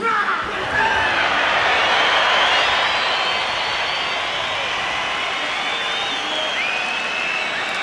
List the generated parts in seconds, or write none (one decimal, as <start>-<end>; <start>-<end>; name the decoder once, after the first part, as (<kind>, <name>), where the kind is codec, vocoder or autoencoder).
none

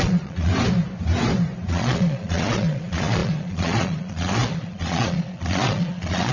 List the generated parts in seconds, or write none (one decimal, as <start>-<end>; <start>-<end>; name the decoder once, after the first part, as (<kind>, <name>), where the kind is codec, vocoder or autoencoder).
0.0-0.5 (vocoder, Vocos); 1.7-6.3

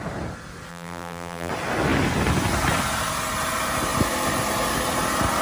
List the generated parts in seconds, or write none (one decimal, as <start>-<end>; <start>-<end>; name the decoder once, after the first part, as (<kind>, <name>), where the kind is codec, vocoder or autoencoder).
0.7-1.5 (vocoder, BigVGAN v2)